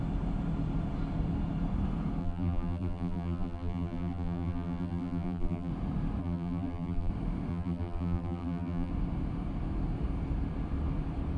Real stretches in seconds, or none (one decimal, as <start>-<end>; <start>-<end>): 0.0-2.2; 5.7-6.2; 7.1-7.5; 8.9-11.4